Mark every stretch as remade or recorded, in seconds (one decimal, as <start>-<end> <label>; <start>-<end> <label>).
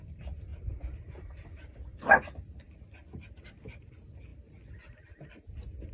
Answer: 0.0-0.5 recorded; 0.5-3.9 remade; 3.9-5.9 recorded